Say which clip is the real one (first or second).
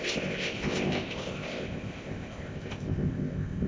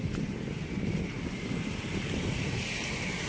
second